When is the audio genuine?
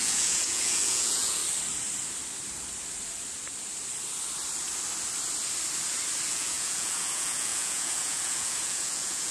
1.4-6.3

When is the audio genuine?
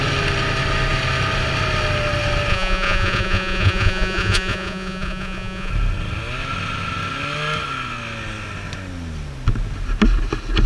0.0-2.5; 5.7-10.7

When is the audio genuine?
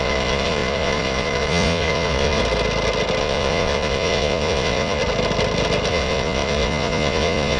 2.4-3.2; 5.0-5.9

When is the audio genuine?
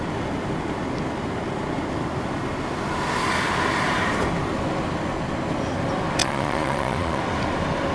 0.0-6.2; 7.2-7.9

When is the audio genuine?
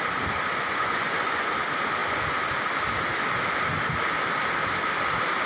0.0-0.6; 1.5-5.5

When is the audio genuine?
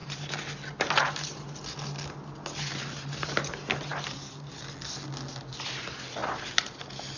0.0-7.2